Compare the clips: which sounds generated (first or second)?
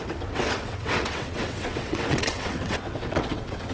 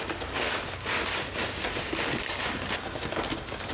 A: first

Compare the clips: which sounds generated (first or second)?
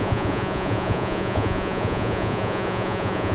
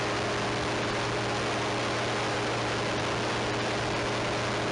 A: first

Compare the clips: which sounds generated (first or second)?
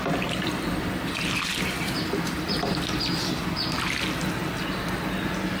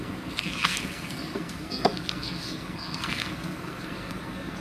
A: second